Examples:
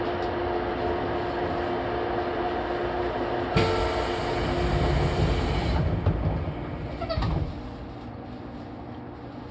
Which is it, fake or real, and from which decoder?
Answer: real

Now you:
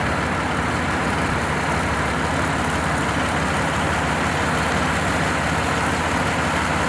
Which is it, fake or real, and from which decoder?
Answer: real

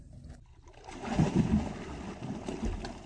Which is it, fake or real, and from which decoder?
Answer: real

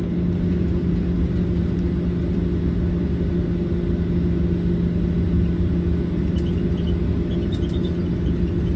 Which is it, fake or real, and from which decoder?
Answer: real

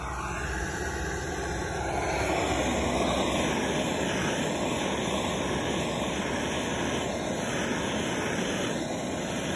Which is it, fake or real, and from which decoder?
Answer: real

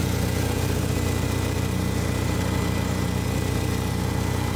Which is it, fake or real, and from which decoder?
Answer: fake, vocoder, BigVGAN v2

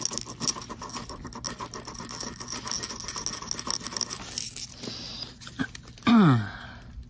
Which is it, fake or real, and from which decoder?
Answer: real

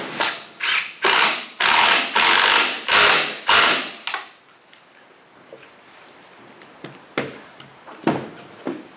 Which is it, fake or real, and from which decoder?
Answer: real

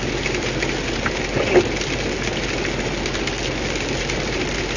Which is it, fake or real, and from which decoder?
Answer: real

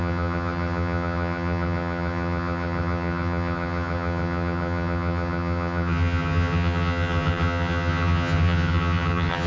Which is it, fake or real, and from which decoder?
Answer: fake, vocoder, HiFi-GAN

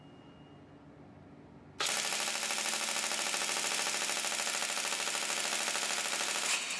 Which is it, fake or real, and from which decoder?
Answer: real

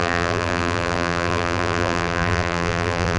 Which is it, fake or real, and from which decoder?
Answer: fake, vocoder, BigVGAN v2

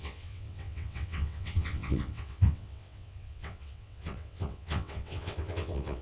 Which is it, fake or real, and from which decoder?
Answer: fake, vocoder, WaveNeXt